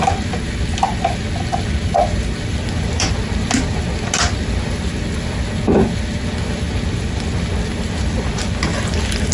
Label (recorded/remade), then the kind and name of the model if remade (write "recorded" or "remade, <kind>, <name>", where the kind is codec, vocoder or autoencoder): recorded